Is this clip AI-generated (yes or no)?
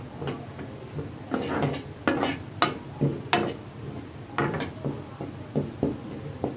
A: no